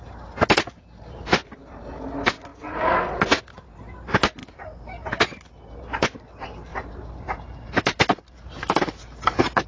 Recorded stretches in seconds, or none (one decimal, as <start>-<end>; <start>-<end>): 0.0-6.7; 8.1-9.7